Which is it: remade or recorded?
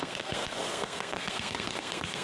remade